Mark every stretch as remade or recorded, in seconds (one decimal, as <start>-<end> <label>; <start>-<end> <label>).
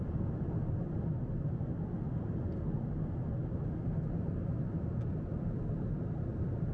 0.0-6.7 recorded